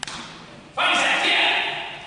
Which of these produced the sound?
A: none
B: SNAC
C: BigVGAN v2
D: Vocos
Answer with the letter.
A